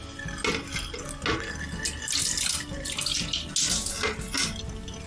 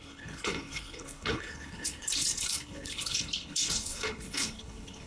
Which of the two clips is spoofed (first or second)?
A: second